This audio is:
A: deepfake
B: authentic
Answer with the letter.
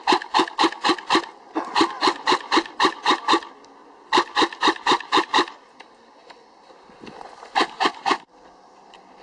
A